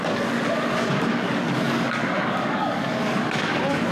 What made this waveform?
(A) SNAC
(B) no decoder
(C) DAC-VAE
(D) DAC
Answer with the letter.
D